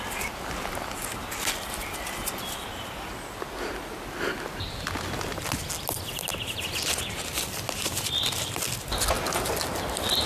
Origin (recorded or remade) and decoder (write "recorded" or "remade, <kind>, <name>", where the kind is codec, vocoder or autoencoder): recorded